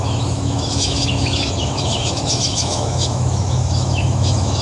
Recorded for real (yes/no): no